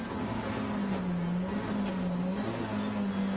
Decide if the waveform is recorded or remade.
recorded